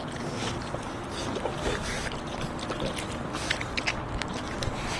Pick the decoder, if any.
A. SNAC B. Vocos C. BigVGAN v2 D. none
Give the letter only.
D